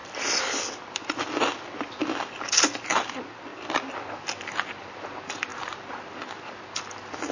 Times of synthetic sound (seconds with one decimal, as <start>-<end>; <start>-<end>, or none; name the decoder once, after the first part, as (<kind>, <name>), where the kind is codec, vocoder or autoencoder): 0.0-2.0 (vocoder, BigVGAN v2); 3.5-4.3; 5.5-6.6